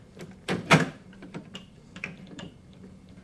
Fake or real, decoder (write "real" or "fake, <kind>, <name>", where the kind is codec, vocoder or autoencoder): fake, vocoder, BigVGAN v2